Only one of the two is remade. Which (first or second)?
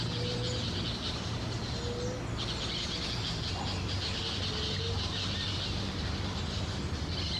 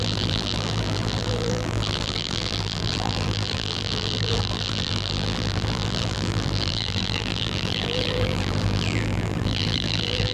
second